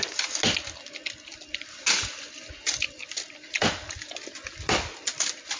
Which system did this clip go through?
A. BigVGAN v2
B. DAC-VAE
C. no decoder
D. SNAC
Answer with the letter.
C